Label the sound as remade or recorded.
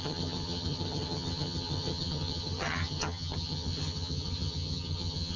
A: remade